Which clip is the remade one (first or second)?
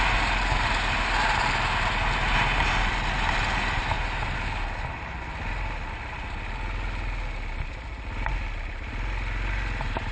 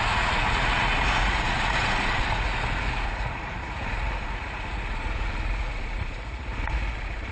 second